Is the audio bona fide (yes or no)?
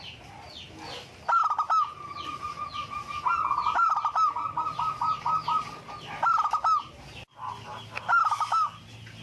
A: yes